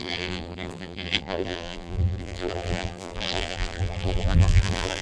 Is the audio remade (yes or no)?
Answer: yes